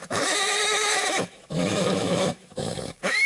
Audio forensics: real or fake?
fake